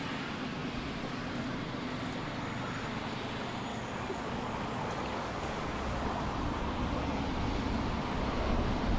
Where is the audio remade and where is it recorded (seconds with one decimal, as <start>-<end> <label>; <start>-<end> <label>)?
0.0-3.7 recorded; 3.7-6.2 remade; 6.2-9.0 recorded